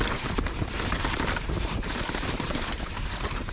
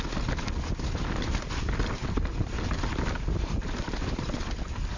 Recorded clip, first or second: second